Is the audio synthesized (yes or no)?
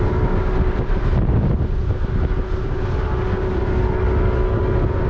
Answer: no